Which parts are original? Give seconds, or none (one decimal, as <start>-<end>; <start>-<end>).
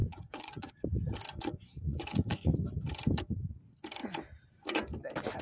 0.7-1.3; 2.5-5.4